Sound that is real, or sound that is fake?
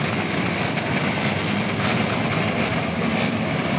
real